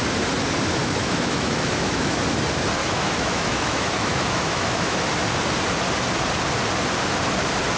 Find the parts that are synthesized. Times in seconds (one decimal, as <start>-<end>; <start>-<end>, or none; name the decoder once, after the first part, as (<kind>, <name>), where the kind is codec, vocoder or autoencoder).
0.8-2.2 (autoencoder, DAC-VAE); 2.8-5.0